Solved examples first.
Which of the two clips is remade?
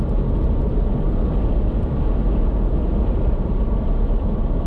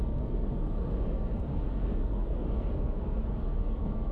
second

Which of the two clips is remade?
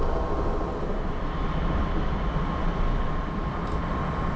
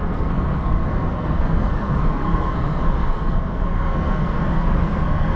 second